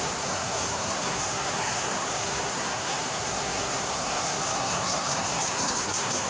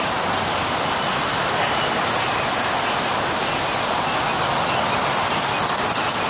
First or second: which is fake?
first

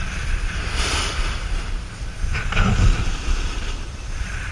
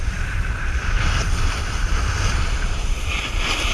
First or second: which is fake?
first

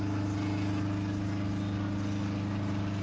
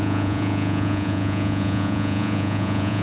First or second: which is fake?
second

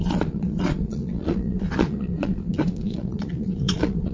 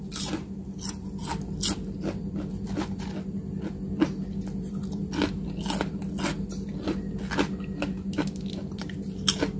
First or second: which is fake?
first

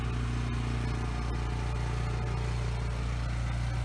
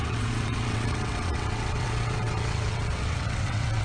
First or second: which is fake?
second